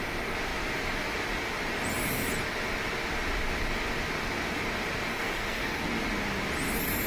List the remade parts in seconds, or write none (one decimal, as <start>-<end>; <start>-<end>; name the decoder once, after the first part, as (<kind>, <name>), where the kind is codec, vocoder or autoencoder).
5.1-5.8 (codec, SNAC)